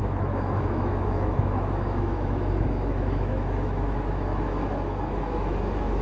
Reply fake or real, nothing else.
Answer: fake